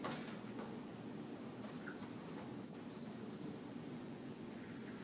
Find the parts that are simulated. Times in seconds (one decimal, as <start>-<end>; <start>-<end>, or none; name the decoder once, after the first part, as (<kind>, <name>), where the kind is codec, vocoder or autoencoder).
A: 0.0-0.9 (vocoder, Vocos); 3.9-5.0